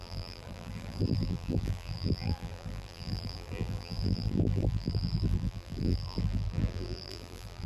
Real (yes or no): no